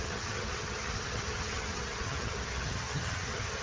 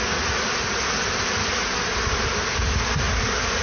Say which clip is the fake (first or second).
first